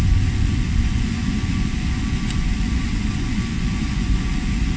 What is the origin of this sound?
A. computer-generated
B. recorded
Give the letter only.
A